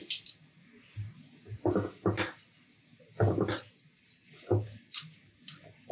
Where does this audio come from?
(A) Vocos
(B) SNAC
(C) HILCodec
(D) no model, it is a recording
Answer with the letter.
D